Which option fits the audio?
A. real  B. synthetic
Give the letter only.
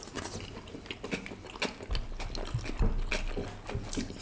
A